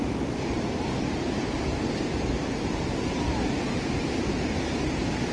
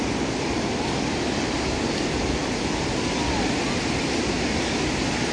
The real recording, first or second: second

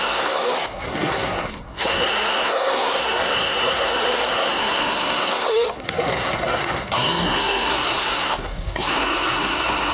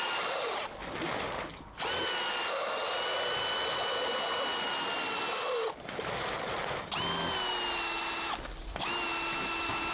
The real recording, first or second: second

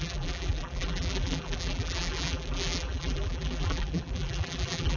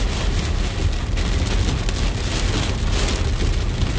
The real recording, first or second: second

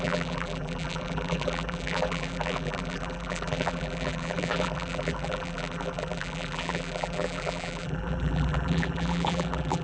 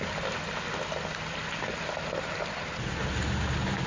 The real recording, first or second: second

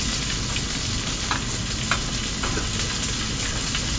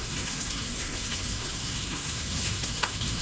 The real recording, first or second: first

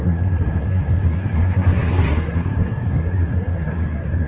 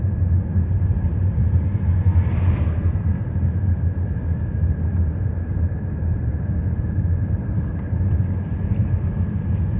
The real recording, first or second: second